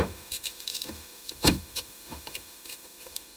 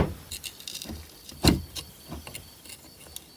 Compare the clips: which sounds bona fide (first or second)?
second